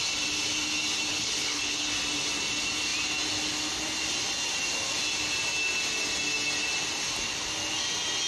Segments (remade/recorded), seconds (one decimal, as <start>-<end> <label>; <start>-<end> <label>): 0.0-1.1 recorded; 1.1-1.9 remade; 1.9-8.3 recorded